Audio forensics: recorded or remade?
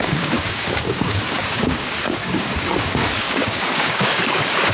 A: remade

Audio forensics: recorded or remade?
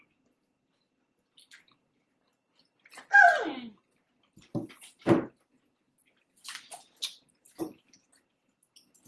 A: recorded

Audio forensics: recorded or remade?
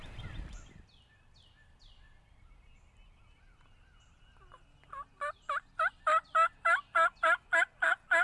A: recorded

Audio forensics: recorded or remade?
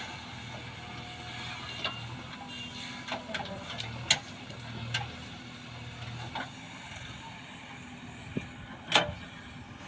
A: recorded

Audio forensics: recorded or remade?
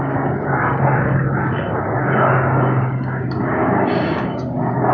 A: remade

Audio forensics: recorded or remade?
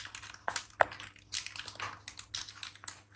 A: recorded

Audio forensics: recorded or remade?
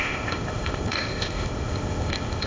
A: remade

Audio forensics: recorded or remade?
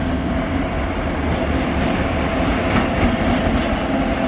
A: recorded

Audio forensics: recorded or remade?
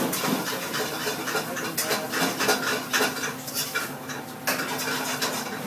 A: recorded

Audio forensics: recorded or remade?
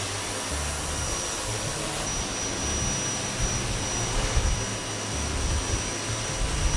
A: recorded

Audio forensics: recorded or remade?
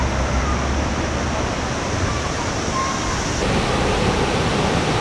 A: recorded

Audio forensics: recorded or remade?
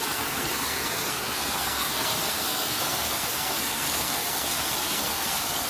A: remade